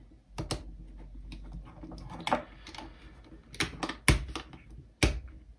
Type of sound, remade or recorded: recorded